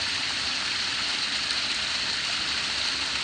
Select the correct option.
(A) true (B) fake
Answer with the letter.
A